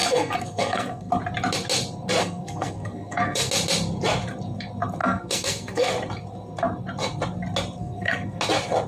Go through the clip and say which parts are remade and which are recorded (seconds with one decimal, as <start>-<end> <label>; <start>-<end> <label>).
0.0-1.1 remade; 1.1-2.2 recorded; 2.2-3.5 remade; 3.5-5.0 recorded; 5.0-5.9 remade; 5.9-7.8 recorded; 7.8-8.4 remade; 8.4-8.9 recorded